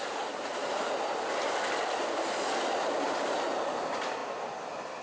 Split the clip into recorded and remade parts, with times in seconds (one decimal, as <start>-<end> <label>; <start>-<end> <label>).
0.0-0.5 recorded; 0.5-2.7 remade; 2.7-5.0 recorded